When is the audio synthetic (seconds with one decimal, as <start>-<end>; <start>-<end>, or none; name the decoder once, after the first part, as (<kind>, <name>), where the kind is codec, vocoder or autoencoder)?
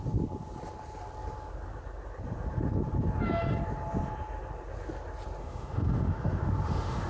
5.4-7.1 (autoencoder, DAC-VAE)